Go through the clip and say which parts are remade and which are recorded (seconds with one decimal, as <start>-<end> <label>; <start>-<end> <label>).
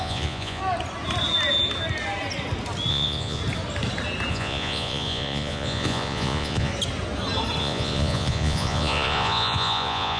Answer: 0.0-0.6 remade; 0.6-2.9 recorded; 2.9-3.4 remade; 3.4-4.3 recorded; 4.3-6.7 remade; 6.7-7.6 recorded; 7.6-10.2 remade